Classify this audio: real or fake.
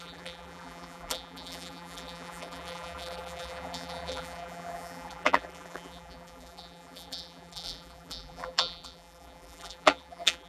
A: fake